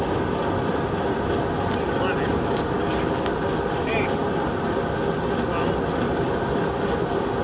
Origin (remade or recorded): recorded